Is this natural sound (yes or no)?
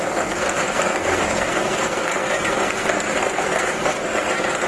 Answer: no